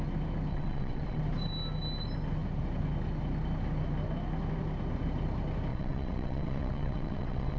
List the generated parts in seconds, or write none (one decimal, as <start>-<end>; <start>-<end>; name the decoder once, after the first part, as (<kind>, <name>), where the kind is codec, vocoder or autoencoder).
0.5-1.2 (vocoder, WaveNeXt); 5.7-7.6